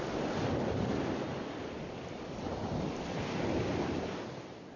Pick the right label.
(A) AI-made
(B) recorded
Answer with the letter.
B